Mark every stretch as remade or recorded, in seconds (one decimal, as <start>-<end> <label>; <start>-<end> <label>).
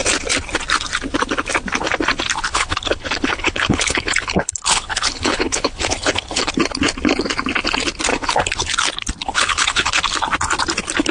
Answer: 0.0-2.5 recorded; 2.5-6.5 remade; 6.5-8.1 recorded; 8.1-8.7 remade; 8.7-9.2 recorded; 9.2-10.0 remade; 10.0-11.1 recorded